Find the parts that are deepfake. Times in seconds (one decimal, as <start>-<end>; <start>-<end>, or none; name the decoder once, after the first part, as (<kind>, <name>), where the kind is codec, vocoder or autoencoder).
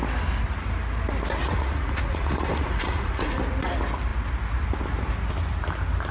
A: 1.4-3.4 (vocoder, Vocos)